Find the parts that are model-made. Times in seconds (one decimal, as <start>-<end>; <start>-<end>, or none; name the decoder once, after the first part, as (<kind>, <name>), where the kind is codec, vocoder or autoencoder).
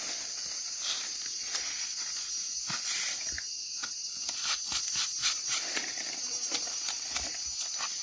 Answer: none